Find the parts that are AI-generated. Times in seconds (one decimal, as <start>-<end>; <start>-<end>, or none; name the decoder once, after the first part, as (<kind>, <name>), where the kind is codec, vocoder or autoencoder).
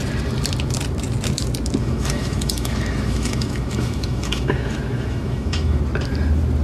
1.8-5.8 (autoencoder, DAC-VAE)